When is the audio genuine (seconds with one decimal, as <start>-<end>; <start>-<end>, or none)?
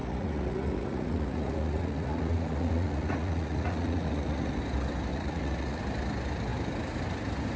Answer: 4.6-5.1; 5.8-7.6